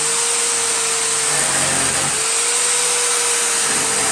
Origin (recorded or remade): recorded